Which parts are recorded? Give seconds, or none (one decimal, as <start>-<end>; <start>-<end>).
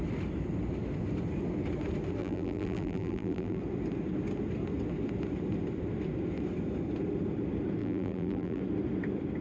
0.0-2.2; 3.6-7.8; 8.6-9.4